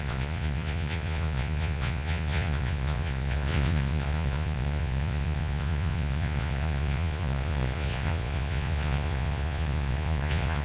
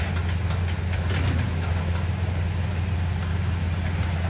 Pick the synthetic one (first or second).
first